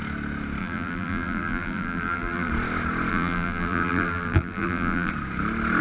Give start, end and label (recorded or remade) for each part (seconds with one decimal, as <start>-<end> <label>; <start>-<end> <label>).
0.0-0.6 recorded; 0.6-2.5 remade; 2.5-3.1 recorded; 3.1-5.1 remade; 5.1-5.8 recorded

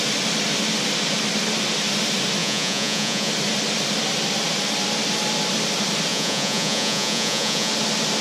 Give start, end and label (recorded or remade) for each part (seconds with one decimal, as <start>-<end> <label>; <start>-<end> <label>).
0.0-2.4 recorded; 2.4-3.3 remade; 3.3-6.1 recorded; 6.1-7.7 remade; 7.7-8.2 recorded

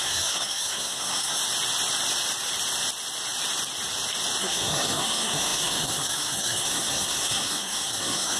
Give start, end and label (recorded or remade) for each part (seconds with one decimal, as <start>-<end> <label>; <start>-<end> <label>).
0.0-1.4 remade; 1.4-4.4 recorded; 4.4-8.4 remade

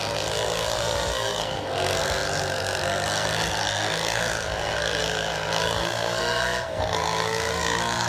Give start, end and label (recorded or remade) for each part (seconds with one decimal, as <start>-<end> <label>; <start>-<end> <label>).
0.0-8.1 remade

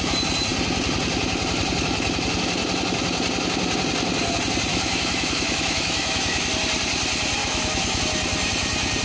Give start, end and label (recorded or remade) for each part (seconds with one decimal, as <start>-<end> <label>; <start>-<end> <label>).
0.0-4.7 recorded; 4.7-6.5 remade; 6.5-7.4 recorded; 7.4-8.0 remade; 8.0-9.0 recorded

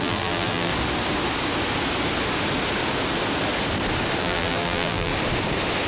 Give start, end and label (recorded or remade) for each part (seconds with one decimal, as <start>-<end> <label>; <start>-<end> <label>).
0.0-0.7 remade; 0.7-4.2 recorded; 4.2-5.1 remade; 5.1-5.9 recorded

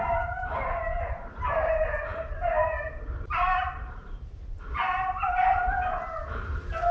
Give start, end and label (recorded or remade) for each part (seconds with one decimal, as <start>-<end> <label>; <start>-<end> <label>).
0.0-6.9 recorded